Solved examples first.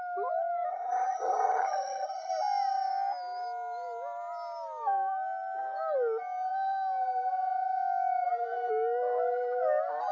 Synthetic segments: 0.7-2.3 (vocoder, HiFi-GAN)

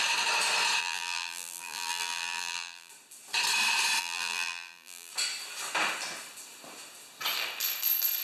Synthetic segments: 0.8-2.9 (vocoder, BigVGAN v2); 4.0-5.1

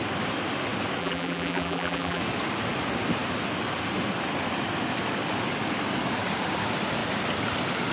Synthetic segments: 1.0-2.2 (vocoder, BigVGAN v2)